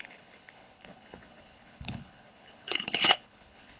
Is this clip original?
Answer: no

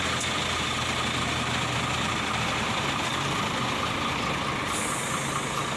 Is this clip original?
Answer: yes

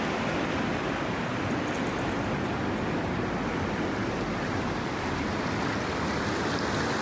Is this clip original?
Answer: yes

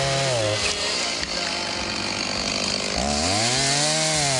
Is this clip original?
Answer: yes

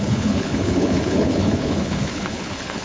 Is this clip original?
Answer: no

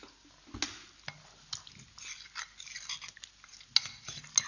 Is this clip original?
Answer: yes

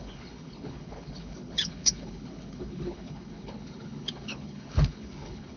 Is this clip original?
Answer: no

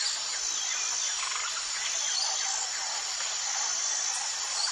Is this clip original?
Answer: yes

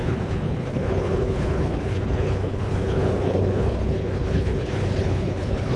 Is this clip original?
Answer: no